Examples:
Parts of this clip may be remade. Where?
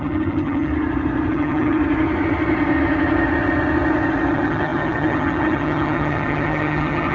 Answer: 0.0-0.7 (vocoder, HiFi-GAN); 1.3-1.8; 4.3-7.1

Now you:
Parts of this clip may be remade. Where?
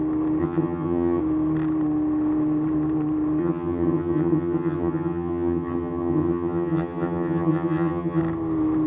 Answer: 0.4-1.2 (vocoder, HiFi-GAN); 3.4-8.2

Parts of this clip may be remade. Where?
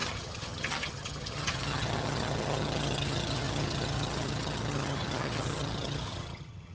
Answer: 0.0-6.7 (vocoder, HiFi-GAN)